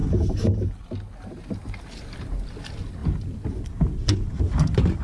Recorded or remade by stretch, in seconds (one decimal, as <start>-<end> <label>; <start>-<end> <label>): 0.0-0.7 remade; 0.7-5.0 recorded